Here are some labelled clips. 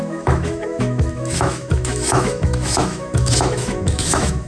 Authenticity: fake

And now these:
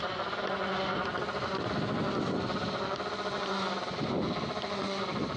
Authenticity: real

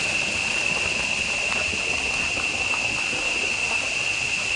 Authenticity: real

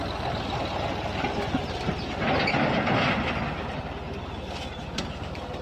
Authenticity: real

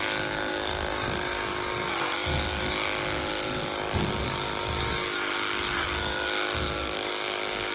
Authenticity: fake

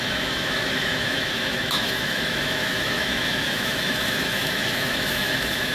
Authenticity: fake